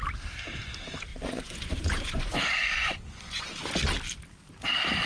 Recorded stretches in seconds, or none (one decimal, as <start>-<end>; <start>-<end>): 0.0-1.1; 3.7-5.1